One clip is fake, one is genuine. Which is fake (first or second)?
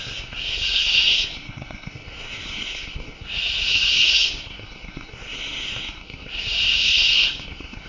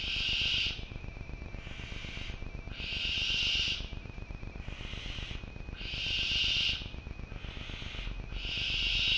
first